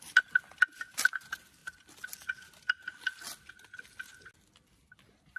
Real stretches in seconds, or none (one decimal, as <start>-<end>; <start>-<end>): 0.0-5.4

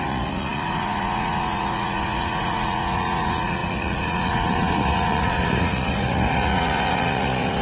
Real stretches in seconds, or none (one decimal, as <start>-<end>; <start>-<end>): none

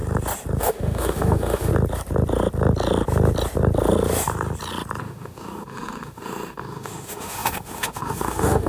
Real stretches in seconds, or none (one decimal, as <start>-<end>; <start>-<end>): 0.0-0.6; 1.7-5.0

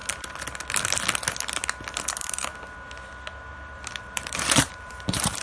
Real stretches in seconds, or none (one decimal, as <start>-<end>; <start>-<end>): 0.0-2.0; 2.5-4.0

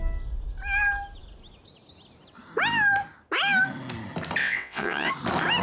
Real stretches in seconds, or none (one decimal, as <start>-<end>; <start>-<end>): 0.0-4.4; 5.1-5.6